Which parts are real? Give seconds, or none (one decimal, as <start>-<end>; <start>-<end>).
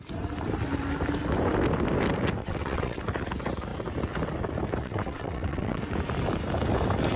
0.0-2.4; 3.0-4.8; 5.8-7.2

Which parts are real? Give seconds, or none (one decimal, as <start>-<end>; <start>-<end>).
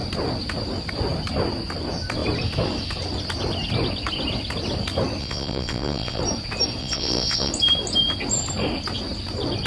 0.0-5.2; 6.2-6.8; 7.5-9.7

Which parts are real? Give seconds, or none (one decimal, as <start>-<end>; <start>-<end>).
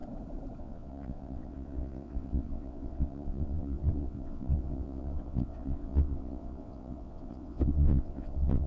0.0-0.6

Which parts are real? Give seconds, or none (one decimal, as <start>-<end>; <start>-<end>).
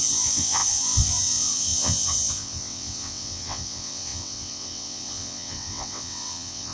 none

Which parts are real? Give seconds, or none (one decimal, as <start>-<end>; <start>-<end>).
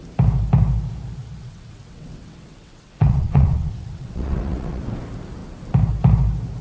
0.0-1.4; 4.8-6.6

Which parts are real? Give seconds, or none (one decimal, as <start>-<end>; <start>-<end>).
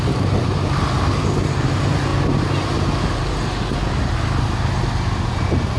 0.0-5.8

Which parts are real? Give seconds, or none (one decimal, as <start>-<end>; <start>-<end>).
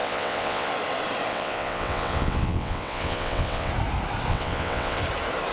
0.7-1.3; 3.7-4.3; 5.0-5.5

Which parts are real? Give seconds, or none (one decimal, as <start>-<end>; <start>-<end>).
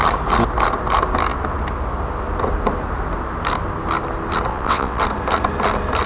0.0-4.5; 5.0-6.1